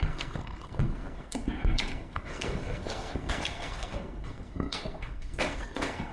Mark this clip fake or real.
fake